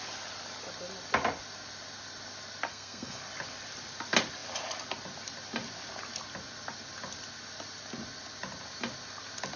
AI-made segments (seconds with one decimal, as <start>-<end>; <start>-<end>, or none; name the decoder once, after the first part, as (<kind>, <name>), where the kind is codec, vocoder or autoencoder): 2.7-3.2 (codec, SNAC)